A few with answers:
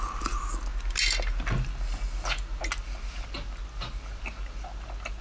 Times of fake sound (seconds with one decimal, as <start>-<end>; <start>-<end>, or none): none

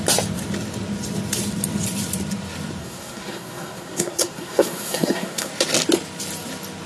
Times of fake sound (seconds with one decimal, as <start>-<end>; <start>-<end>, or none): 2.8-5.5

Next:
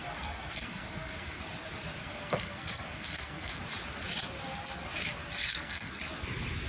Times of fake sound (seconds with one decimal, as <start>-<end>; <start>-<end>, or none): 0.0-1.4; 2.0-3.6; 5.4-6.0